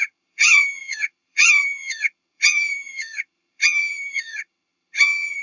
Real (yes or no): no